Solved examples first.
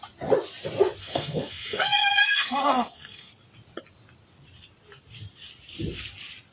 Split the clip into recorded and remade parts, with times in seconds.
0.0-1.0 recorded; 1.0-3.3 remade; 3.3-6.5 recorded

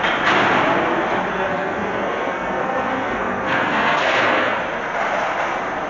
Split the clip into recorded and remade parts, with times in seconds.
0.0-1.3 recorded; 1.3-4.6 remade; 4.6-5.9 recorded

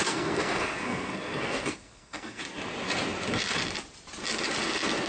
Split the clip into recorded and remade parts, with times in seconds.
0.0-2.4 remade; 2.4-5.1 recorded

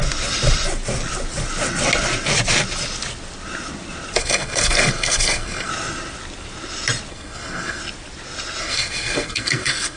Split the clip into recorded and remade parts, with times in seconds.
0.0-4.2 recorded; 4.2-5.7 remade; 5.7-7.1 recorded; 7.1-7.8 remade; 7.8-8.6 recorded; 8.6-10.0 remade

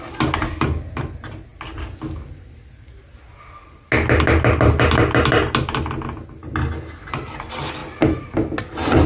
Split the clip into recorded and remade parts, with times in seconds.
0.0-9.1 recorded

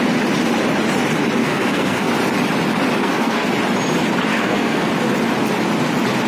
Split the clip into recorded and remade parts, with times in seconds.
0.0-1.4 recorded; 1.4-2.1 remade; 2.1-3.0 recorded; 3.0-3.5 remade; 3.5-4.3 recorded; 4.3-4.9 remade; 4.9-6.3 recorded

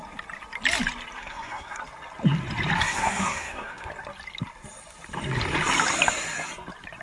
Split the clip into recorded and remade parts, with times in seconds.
0.0-1.2 recorded; 1.2-1.8 remade; 1.8-2.8 recorded; 2.8-3.9 remade; 3.9-7.0 recorded